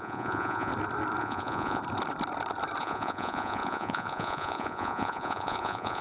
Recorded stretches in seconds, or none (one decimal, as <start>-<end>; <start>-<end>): 0.7-1.2; 1.8-2.8